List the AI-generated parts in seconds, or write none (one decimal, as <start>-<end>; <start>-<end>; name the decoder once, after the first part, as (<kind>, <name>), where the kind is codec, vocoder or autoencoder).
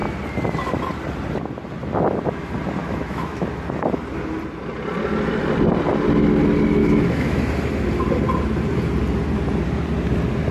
2.8-3.4 (autoencoder, DAC-VAE); 6.8-7.4